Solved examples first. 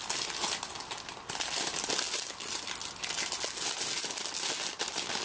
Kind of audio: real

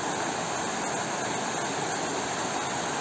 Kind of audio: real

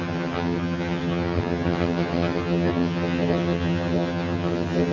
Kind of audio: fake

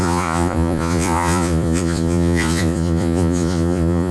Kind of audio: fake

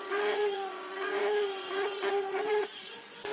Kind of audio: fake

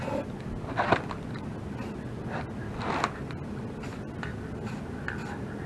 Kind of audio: real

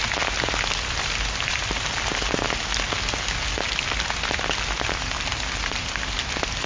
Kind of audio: real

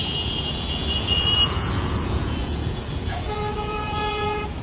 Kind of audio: fake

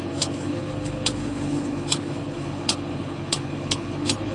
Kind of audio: fake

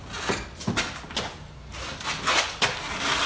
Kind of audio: real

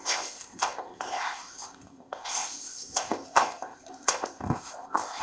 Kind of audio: fake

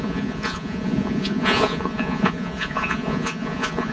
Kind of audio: fake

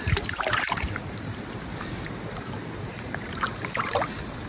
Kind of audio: fake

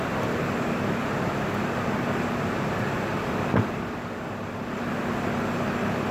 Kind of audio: real